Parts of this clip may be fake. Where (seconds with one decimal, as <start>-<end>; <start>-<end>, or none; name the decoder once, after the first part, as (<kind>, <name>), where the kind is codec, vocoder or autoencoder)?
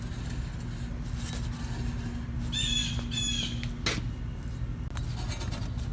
none